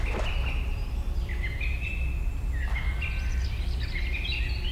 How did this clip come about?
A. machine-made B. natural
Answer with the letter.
B